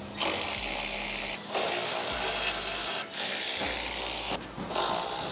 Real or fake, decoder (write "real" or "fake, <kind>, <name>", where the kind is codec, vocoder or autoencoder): real